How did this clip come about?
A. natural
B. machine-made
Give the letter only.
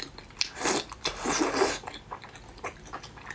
B